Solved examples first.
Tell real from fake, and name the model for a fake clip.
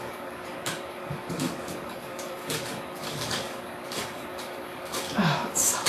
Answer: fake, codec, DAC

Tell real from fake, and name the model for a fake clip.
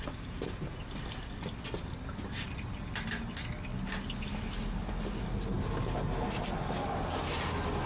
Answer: real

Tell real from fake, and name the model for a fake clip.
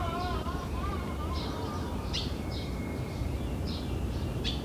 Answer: fake, vocoder, BigVGAN v2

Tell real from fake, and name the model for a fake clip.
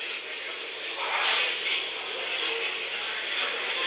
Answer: real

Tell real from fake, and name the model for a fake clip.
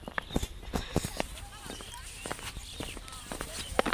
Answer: real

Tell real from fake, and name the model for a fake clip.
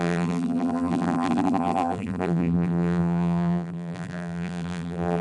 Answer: fake, vocoder, BigVGAN v2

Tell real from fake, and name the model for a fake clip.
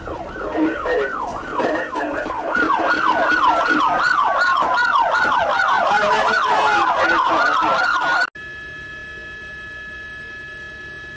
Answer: real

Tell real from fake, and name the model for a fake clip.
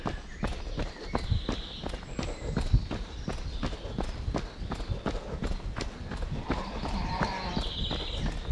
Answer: real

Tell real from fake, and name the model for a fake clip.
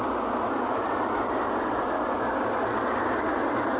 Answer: real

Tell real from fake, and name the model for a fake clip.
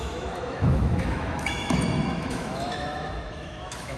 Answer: fake, autoencoder, DAC-VAE